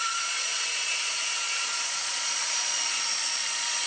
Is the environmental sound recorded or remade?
remade